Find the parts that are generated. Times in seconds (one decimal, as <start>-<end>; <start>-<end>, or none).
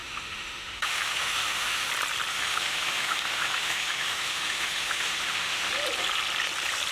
0.0-1.9; 2.3-5.7